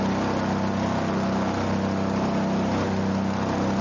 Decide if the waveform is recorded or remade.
recorded